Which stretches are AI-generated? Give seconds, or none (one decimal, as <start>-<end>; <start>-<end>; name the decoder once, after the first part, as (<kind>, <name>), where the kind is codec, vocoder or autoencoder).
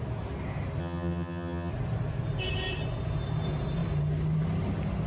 0.8-1.7 (vocoder, HiFi-GAN)